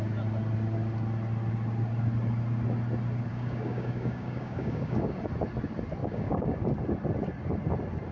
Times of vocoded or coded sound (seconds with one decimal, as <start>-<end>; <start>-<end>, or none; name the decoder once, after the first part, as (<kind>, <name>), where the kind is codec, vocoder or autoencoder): 3.3-5.2 (codec, DAC); 6.0-6.6